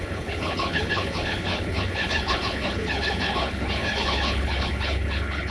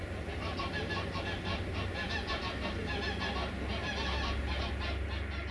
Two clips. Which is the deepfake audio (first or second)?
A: first